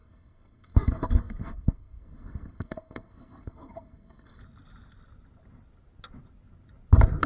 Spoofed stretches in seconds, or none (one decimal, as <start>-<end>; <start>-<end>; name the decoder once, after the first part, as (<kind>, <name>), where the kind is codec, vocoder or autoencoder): 0.0-4.4 (codec, SNAC)